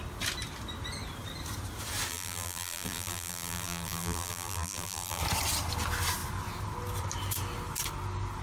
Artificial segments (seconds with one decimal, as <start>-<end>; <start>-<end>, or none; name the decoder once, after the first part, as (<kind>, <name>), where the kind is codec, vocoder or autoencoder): 2.1-5.2 (vocoder, BigVGAN v2)

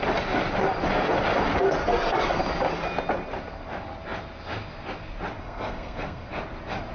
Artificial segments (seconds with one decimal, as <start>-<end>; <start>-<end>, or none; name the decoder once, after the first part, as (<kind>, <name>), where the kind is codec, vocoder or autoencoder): 1.8-2.4 (codec, SNAC); 5.4-6.3